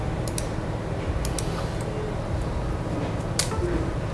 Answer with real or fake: real